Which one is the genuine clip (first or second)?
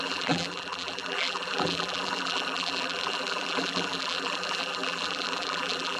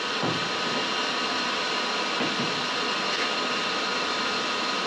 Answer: second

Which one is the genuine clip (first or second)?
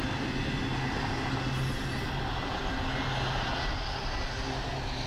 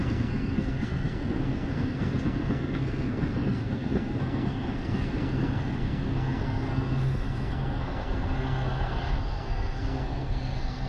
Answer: first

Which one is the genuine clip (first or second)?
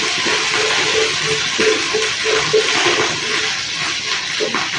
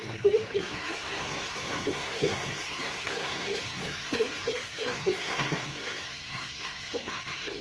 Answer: first